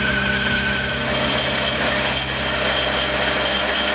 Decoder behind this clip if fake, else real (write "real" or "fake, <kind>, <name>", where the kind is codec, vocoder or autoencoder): real